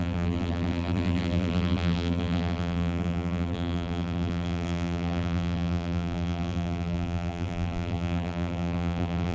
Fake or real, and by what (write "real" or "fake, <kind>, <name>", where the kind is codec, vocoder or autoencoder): fake, vocoder, BigVGAN v2